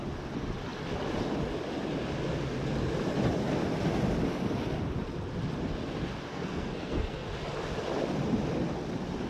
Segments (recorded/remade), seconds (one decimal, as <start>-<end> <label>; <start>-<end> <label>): 0.0-6.3 recorded; 6.3-7.3 remade; 7.3-9.3 recorded